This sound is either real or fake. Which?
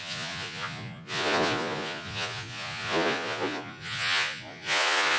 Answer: fake